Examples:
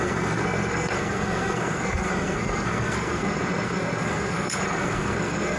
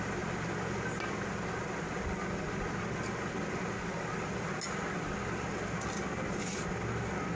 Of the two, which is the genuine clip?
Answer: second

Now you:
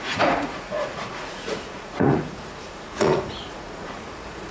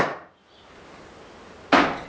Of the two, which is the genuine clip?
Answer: second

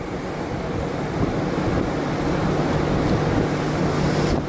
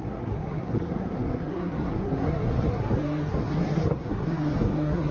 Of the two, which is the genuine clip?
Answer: first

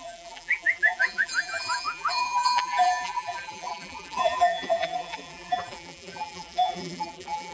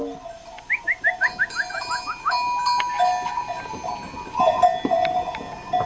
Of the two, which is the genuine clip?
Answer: second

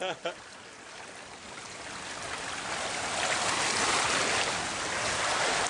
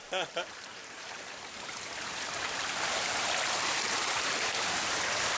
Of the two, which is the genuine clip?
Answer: first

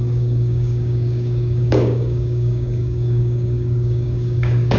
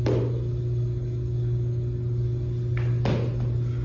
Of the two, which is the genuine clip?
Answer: second